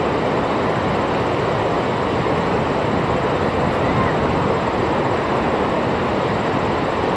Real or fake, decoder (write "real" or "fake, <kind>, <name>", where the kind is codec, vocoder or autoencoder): real